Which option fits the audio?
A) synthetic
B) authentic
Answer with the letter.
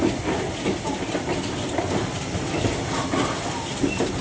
B